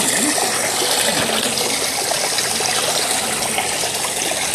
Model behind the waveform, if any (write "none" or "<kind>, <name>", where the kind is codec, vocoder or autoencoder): none